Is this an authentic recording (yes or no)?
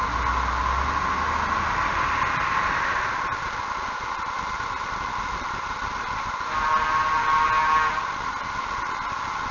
yes